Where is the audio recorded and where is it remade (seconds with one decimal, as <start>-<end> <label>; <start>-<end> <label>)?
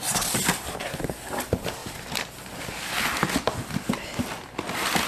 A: 0.0-5.1 recorded